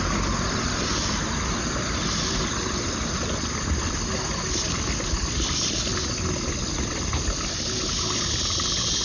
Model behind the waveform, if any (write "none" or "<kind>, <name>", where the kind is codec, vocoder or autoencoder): none